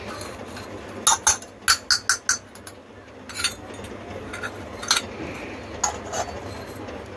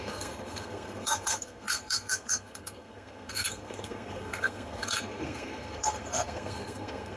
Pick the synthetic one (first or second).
second